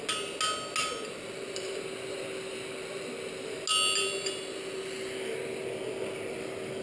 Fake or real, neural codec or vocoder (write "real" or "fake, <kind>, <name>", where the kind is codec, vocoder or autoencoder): real